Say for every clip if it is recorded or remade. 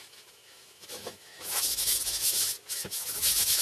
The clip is remade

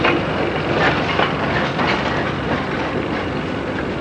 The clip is recorded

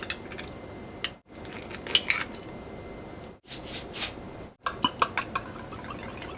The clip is recorded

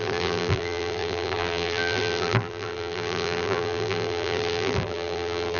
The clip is remade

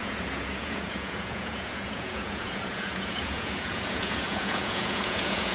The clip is remade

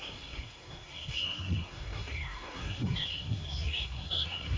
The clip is remade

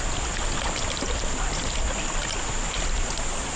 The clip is recorded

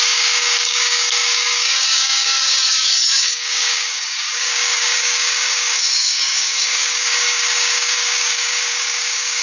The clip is remade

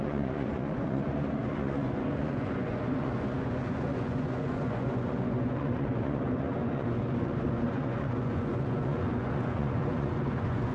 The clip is remade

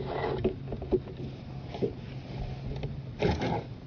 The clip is recorded